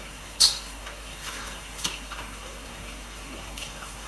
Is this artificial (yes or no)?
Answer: yes